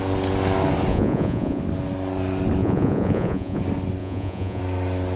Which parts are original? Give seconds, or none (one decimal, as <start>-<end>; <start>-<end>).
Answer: 0.0-0.9; 1.6-2.6; 3.6-4.0; 4.6-5.2